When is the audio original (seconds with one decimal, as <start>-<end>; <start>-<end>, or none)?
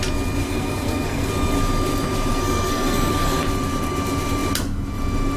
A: 0.0-0.4; 1.3-2.3; 3.4-5.4